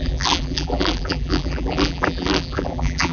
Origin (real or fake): fake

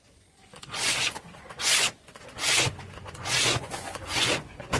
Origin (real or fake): fake